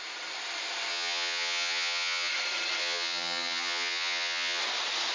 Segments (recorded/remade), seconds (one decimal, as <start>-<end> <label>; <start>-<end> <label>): 0.0-0.9 recorded; 0.9-2.3 remade; 2.3-2.8 recorded; 2.8-4.6 remade; 4.6-5.1 recorded